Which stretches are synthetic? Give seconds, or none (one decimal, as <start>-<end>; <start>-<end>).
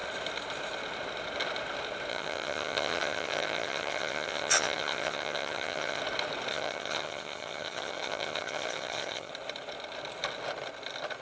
2.1-6.0; 6.5-9.3